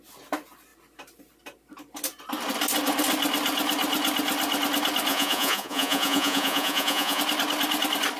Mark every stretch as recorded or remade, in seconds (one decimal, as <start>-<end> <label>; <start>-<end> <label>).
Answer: 0.0-5.1 recorded; 5.1-7.2 remade; 7.2-8.2 recorded